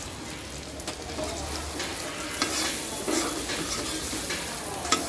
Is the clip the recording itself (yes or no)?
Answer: yes